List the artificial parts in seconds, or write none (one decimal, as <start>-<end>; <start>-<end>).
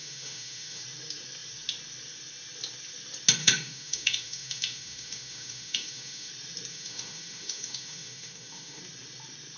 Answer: 0.0-0.8; 3.4-6.3; 6.7-8.8